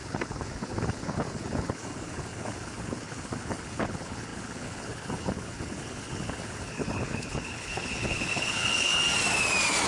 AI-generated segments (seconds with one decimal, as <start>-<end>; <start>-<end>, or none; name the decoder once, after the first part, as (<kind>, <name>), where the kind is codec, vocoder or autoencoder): 0.0-9.0 (codec, HILCodec)